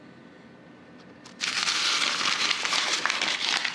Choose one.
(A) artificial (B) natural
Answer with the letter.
B